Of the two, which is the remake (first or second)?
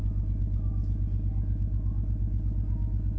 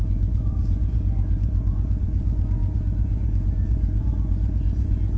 second